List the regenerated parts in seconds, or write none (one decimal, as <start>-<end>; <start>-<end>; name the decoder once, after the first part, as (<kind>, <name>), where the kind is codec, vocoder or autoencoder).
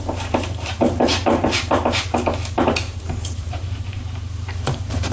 0.0-1.8 (vocoder, BigVGAN v2); 2.6-5.1